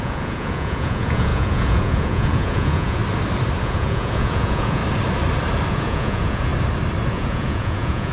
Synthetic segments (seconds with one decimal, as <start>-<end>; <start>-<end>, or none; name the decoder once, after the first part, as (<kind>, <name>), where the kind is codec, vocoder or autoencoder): 0.0-3.0 (vocoder, Vocos); 3.6-4.8; 5.7-6.5; 7.1-8.1